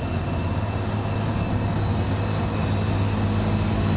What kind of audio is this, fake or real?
real